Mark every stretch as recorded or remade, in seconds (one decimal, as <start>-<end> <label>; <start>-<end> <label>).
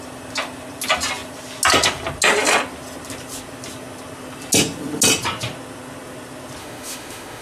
0.0-6.6 recorded; 6.6-7.4 remade